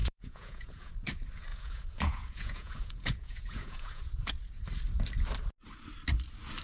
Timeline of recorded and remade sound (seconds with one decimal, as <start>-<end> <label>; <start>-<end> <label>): 0.0-0.9 remade; 0.9-1.5 recorded; 1.5-4.3 remade; 4.3-6.6 recorded